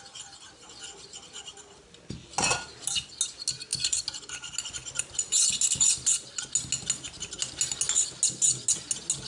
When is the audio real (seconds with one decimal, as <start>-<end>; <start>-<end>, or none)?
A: 0.0-3.7; 4.3-4.8; 5.3-9.3